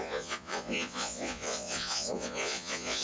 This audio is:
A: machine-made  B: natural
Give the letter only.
A